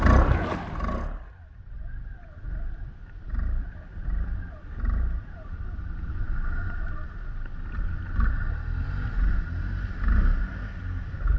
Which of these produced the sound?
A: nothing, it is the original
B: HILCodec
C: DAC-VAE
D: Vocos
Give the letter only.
A